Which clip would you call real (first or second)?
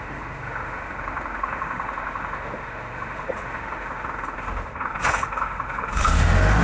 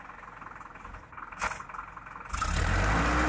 second